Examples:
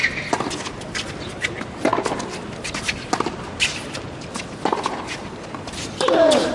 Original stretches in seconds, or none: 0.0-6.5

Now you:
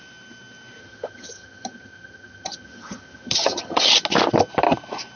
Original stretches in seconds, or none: 0.0-0.8; 3.9-5.2